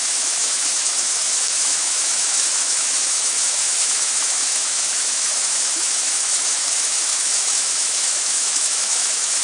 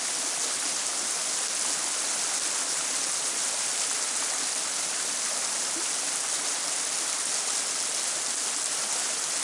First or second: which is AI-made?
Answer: first